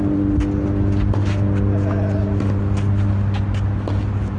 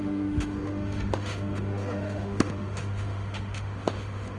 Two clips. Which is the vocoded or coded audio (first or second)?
second